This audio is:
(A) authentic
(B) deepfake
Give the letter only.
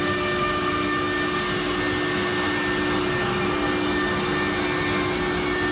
A